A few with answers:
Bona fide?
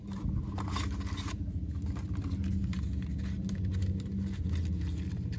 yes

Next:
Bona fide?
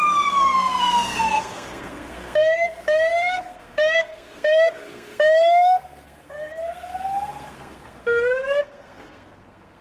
no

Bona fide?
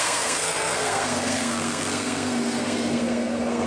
no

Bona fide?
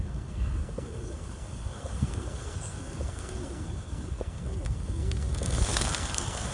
no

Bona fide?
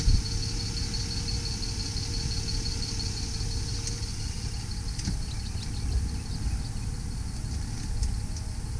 yes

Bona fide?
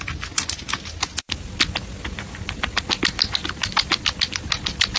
yes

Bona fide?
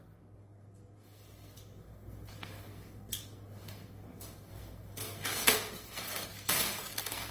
no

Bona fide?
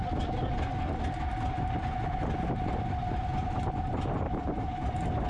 yes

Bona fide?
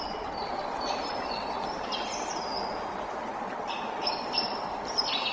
yes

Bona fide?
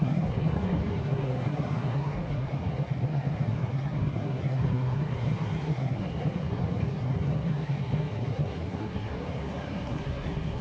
no